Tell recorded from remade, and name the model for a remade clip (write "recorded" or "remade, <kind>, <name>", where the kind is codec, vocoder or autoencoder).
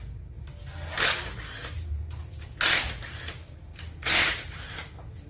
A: recorded